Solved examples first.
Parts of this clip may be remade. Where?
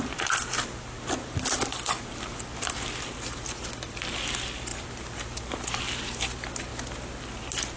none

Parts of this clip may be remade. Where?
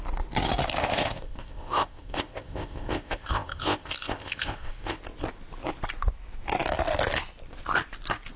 0.8-5.0 (codec, ZipCodec)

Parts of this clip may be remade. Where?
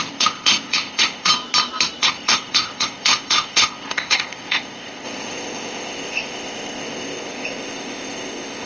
0.0-1.3 (codec, ZipCodec); 2.0-8.7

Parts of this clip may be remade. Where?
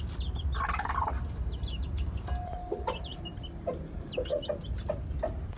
none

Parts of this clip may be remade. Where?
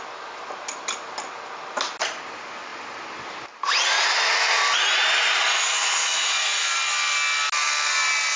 none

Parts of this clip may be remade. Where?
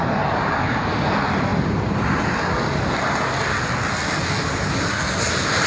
none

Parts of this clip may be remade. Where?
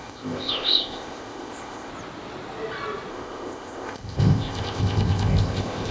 0.0-1.9 (codec, ZipCodec); 3.1-5.9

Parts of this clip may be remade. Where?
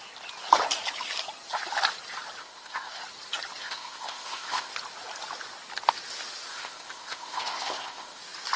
2.4-3.0 (codec, ZipCodec); 3.6-4.7; 6.5-8.2